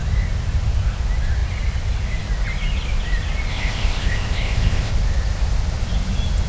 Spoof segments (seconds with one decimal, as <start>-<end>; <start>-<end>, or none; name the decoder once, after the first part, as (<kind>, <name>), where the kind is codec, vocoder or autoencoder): 3.5-4.9 (codec, ZipCodec)